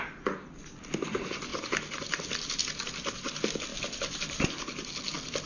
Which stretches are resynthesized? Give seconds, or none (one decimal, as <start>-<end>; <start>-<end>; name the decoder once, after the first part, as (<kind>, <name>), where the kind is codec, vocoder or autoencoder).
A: 1.5-2.6 (vocoder, BigVGAN v2); 3.7-5.5